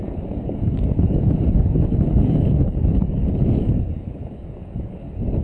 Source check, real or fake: fake